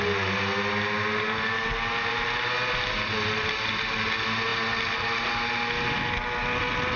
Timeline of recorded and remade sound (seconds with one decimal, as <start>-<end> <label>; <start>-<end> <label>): 0.0-7.0 recorded